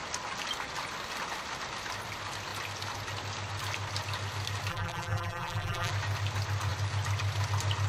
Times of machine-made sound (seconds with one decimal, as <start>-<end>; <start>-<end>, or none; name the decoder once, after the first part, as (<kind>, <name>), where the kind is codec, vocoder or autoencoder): 4.7-5.9 (vocoder, BigVGAN v2)